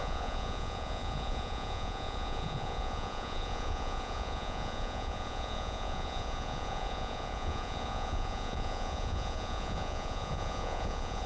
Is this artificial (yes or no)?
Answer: yes